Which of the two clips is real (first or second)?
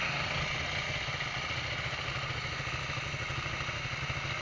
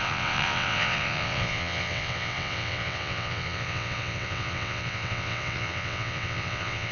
first